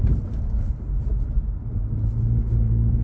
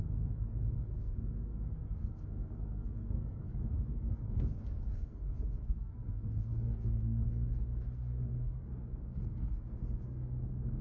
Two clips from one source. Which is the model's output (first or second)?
second